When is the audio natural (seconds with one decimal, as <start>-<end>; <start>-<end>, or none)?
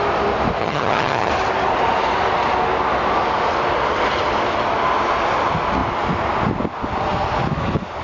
0.0-0.6; 1.3-8.0